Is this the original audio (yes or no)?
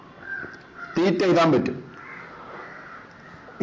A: yes